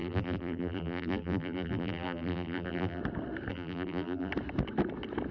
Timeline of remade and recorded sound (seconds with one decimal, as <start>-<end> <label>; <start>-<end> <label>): 0.0-3.0 remade; 3.0-3.5 recorded; 3.5-4.3 remade; 4.3-5.3 recorded